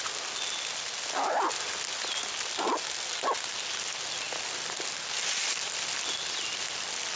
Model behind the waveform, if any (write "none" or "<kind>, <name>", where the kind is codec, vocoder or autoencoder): none